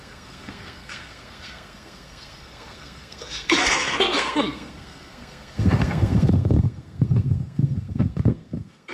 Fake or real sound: fake